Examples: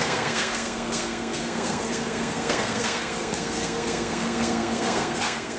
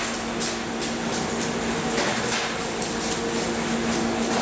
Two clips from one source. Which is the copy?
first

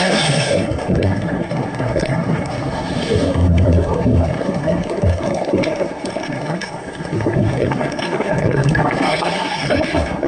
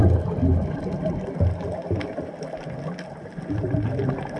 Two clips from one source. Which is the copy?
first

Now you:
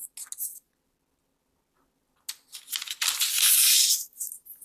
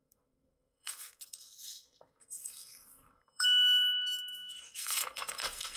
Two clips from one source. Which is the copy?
second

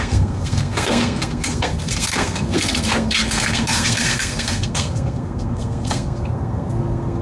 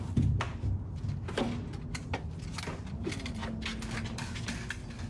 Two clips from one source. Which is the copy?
first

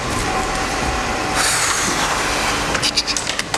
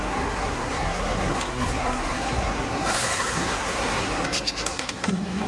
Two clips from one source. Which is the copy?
second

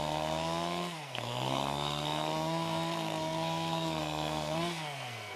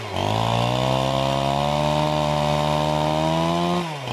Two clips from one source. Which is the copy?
first